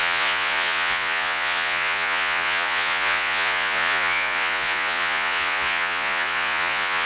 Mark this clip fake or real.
fake